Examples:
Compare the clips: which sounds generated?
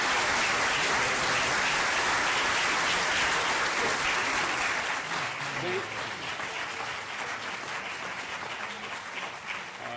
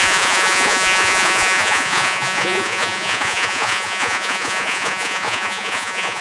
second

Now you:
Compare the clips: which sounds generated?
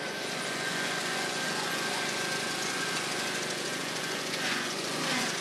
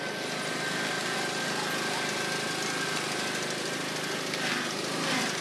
first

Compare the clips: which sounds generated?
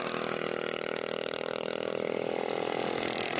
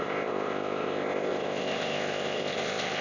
second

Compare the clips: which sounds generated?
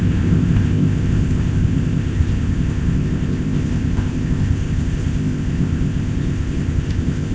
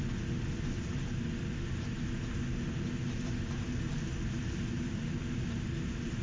first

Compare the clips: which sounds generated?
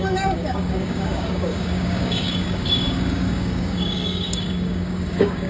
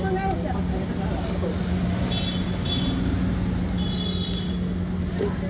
first